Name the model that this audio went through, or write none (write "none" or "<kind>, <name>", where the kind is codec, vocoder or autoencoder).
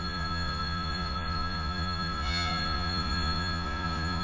vocoder, Vocos